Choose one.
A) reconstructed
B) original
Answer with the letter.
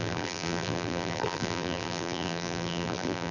A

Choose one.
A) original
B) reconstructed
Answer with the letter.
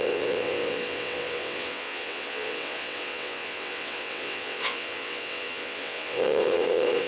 B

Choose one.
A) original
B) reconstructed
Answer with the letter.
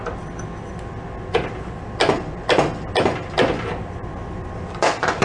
A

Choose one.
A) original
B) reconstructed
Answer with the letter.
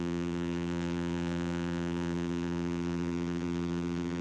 B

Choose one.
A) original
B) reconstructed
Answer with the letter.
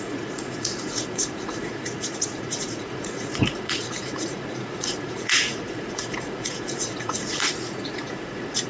B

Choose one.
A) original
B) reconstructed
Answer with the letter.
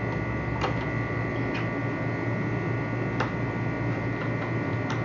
A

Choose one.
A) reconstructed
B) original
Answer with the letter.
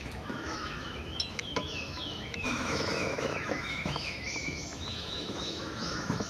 A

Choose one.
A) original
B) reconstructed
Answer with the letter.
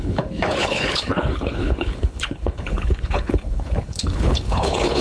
B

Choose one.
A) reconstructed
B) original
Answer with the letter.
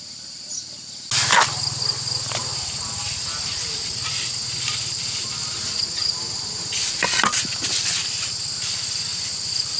B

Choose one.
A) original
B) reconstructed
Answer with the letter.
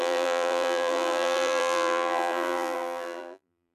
B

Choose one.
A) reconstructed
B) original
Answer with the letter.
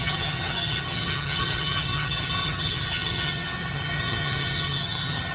A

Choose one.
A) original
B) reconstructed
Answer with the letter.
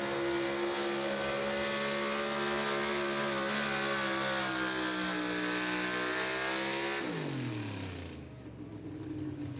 A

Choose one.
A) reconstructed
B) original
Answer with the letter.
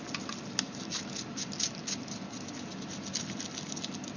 B